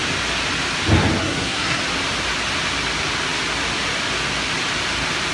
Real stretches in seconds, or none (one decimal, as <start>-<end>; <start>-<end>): 0.0-1.2; 1.8-5.3